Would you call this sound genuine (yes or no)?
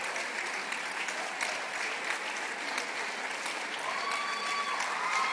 yes